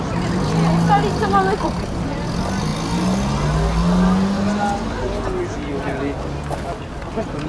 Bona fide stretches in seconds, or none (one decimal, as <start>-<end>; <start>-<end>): 0.0-7.5